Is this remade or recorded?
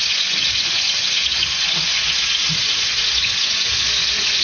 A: remade